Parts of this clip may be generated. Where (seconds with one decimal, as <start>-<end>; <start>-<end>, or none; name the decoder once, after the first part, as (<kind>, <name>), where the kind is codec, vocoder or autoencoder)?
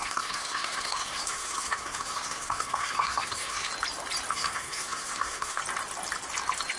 0.0-3.7 (codec, SNAC); 4.3-5.6